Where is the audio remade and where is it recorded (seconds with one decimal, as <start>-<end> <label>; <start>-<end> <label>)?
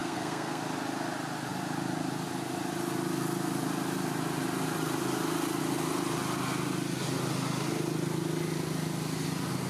0.0-0.6 remade; 0.6-9.7 recorded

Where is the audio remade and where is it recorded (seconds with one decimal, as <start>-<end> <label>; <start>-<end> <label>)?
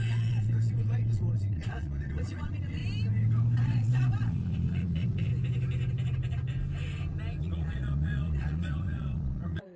0.0-2.8 remade; 2.8-3.6 recorded; 3.6-5.3 remade; 5.3-7.4 recorded; 7.4-9.8 remade